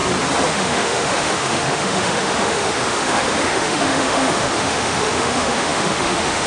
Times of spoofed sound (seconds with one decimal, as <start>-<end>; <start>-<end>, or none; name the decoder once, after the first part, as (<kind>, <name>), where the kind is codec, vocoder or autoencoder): 0.5-6.5 (autoencoder, DAC-VAE)